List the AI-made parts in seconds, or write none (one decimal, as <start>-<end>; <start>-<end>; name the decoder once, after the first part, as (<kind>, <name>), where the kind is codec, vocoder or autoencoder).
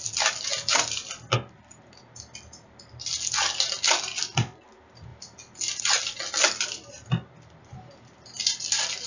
none